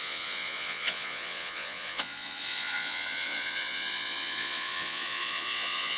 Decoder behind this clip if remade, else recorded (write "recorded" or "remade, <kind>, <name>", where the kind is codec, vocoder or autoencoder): remade, vocoder, Vocos